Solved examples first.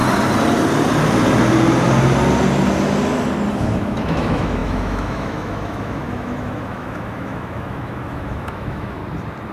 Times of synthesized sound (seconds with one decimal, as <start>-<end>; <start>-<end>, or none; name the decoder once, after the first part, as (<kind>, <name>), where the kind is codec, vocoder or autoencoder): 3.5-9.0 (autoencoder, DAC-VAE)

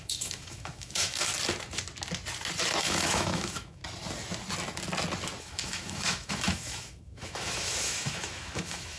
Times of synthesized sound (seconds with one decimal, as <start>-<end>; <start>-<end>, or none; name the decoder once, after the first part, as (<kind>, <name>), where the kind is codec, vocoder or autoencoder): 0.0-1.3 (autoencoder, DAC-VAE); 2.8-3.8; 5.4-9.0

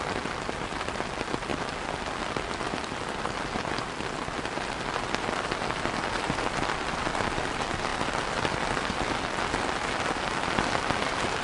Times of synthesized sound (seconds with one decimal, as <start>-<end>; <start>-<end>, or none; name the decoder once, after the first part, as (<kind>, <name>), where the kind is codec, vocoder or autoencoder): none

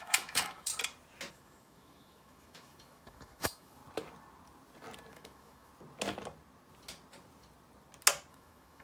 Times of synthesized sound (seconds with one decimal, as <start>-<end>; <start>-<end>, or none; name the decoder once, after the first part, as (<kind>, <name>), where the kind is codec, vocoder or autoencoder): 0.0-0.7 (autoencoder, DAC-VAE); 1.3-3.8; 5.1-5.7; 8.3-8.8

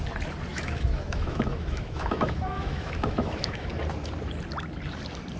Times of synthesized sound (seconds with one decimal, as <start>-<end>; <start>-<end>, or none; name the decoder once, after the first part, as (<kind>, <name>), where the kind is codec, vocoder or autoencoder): 0.5-3.7 (autoencoder, DAC-VAE)